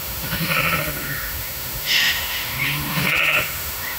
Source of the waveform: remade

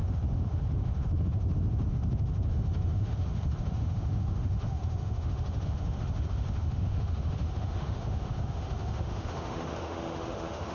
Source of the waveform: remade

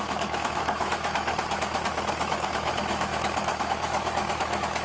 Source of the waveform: remade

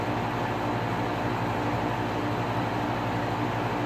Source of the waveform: recorded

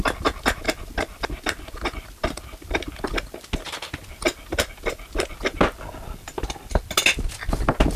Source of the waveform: recorded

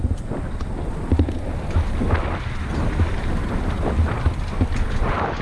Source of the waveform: recorded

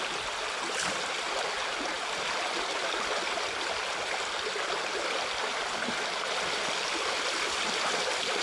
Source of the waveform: recorded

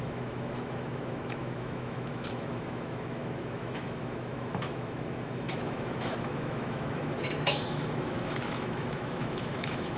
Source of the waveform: remade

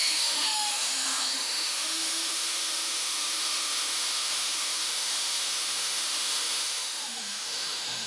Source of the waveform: remade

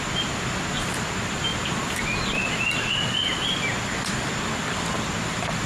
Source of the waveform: recorded